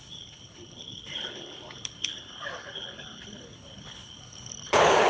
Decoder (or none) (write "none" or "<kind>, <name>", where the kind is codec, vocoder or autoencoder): codec, HILCodec